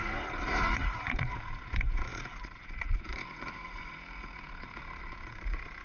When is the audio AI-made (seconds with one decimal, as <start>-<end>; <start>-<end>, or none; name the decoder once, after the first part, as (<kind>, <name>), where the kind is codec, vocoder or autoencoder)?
0.0-5.8 (vocoder, Vocos)